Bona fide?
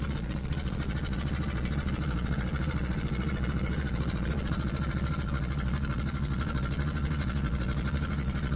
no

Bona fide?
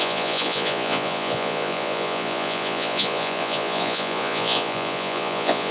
no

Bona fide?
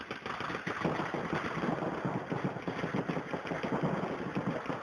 yes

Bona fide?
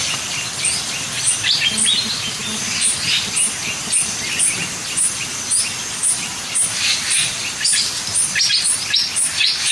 yes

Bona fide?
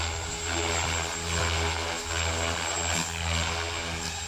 yes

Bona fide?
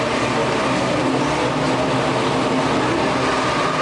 yes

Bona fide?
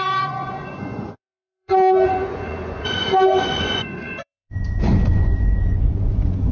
no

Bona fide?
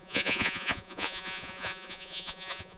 no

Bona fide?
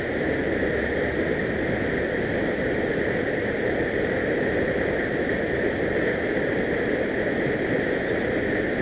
yes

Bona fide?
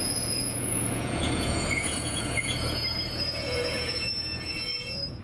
no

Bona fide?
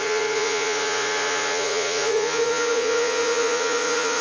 no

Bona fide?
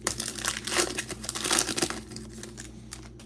yes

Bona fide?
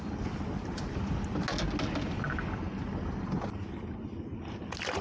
yes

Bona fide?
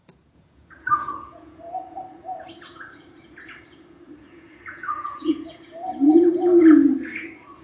no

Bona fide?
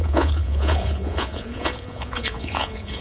no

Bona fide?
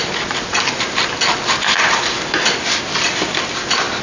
yes